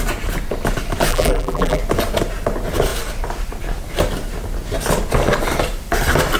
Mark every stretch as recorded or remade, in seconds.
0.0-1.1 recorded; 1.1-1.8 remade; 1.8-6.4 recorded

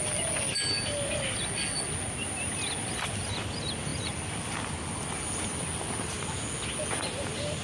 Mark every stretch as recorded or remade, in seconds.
0.0-7.6 recorded

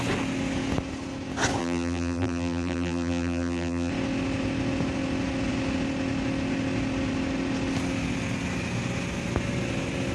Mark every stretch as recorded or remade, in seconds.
0.0-1.6 recorded; 1.6-3.9 remade; 3.9-10.1 recorded

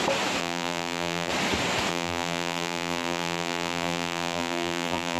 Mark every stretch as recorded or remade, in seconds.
0.0-0.4 recorded; 0.4-1.3 remade; 1.3-1.9 recorded; 1.9-5.2 remade

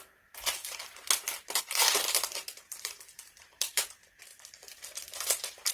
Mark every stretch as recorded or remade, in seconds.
0.0-5.7 remade

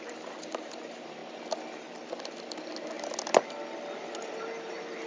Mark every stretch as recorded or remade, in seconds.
0.0-1.2 remade; 1.2-4.3 recorded; 4.3-5.1 remade